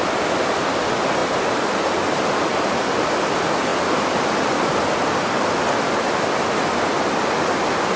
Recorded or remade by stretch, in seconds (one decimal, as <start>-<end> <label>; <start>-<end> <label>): 0.0-8.0 recorded